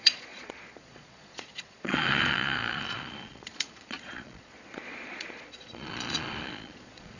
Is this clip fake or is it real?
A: fake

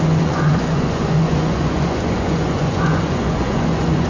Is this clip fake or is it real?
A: fake